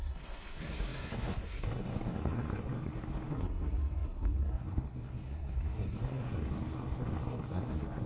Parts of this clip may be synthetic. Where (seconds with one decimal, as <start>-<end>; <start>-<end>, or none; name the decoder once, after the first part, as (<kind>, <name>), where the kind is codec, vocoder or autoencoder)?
0.0-8.1 (codec, SNAC)